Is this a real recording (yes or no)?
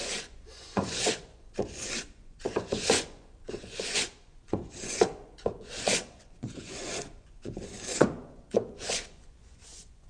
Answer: no